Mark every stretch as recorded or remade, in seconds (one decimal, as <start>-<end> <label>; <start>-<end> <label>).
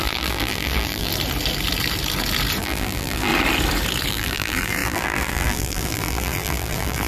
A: 0.0-1.1 remade; 1.1-2.6 recorded; 2.6-3.3 remade; 3.3-4.1 recorded; 4.1-7.1 remade